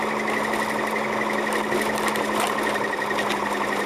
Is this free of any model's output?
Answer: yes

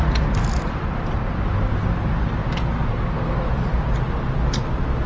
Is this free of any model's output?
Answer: yes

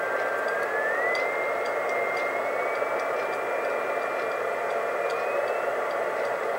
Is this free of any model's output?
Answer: yes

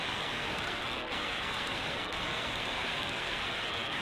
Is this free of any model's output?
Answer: no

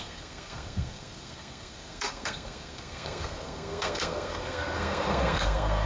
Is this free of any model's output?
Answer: no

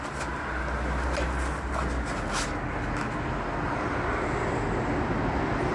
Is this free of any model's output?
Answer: yes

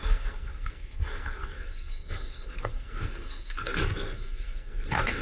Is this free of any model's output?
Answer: no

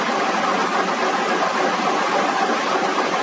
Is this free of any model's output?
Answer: yes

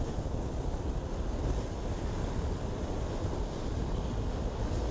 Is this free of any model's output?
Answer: yes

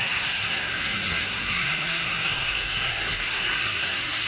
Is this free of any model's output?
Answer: no